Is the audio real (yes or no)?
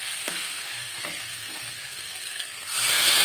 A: no